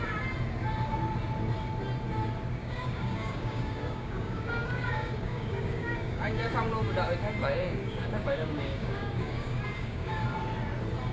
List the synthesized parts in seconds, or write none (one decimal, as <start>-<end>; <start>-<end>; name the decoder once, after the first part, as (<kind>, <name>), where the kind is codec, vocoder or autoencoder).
2.6-6.5 (codec, DAC); 7.4-10.1